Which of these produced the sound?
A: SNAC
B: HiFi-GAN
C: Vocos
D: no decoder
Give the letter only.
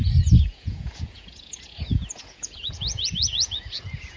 C